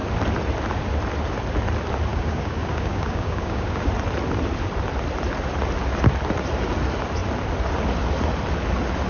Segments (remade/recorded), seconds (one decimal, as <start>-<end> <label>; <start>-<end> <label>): 0.0-2.1 recorded; 2.1-3.9 remade; 3.9-9.1 recorded